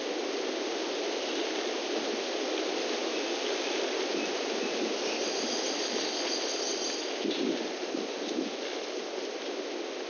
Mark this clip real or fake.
real